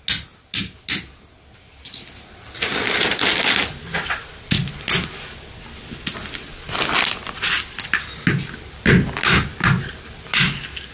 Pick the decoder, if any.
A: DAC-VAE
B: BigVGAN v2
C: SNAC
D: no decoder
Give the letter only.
D